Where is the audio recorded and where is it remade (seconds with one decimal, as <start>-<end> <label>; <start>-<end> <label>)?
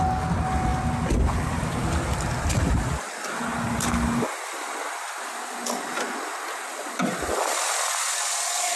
0.0-8.8 recorded